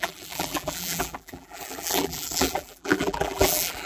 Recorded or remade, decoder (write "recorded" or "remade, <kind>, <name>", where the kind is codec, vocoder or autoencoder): remade, vocoder, BigVGAN v2